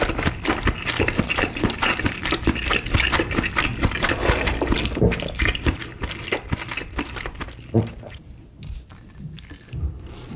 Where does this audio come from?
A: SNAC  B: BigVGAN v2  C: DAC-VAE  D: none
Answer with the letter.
D